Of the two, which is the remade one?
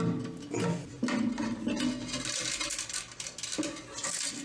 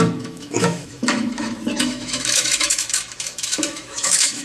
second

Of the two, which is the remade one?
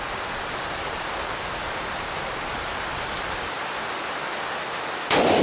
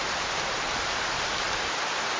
second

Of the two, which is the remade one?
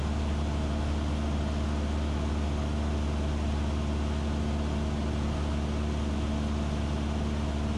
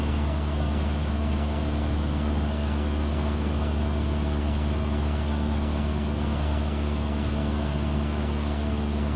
second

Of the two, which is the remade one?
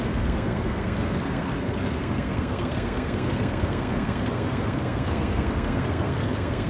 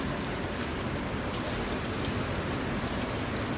first